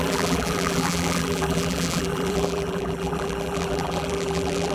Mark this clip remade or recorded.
remade